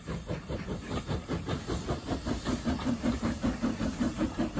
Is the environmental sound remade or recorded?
recorded